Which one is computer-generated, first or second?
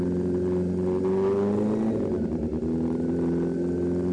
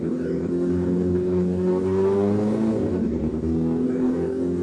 second